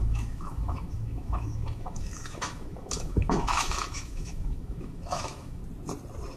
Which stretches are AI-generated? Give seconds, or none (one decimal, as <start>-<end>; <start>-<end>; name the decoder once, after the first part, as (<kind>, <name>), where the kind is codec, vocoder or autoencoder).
0.0-5.6 (autoencoder, DAC-VAE)

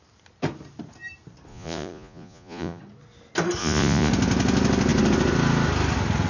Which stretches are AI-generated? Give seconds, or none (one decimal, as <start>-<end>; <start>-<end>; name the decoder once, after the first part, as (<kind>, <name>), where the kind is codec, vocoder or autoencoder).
1.5-2.8 (vocoder, Vocos); 3.6-4.1

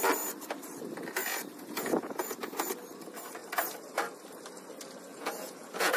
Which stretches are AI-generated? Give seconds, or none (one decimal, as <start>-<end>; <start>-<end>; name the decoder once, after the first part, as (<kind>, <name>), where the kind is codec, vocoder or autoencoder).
1.2-2.7 (vocoder, Vocos); 5.1-6.0

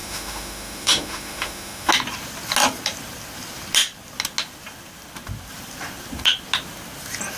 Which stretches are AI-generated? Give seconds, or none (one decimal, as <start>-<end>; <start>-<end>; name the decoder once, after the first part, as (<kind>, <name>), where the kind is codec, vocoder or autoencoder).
0.0-1.9 (autoencoder, DAC-VAE)

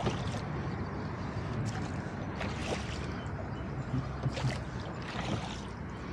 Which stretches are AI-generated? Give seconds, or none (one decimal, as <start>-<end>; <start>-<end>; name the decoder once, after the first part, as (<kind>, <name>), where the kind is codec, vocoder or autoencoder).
0.0-0.8 (vocoder, BigVGAN v2); 2.6-5.1

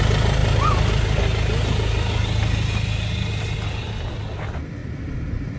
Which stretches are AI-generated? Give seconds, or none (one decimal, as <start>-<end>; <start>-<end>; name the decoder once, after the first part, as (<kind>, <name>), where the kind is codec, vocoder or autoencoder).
none